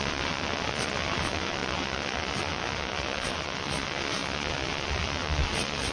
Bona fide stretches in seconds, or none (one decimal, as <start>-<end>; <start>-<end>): none